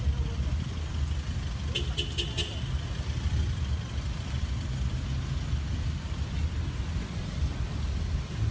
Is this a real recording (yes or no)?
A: yes